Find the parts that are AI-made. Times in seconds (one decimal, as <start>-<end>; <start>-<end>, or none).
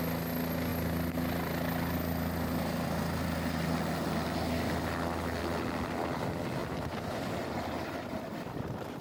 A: none